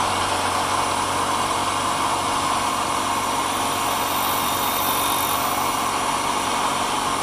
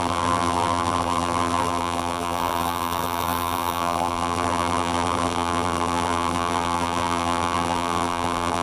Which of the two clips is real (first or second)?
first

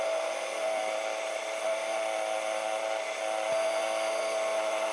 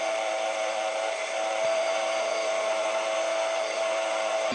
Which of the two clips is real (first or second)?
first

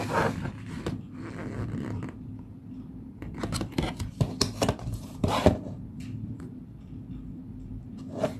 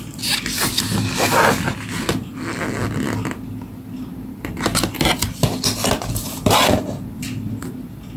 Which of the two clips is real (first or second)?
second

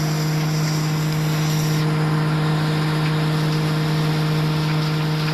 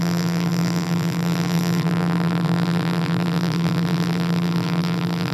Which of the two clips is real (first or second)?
first